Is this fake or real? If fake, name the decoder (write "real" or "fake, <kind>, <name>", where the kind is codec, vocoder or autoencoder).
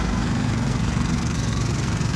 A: fake, codec, SNAC